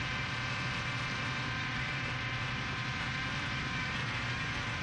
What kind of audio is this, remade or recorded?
remade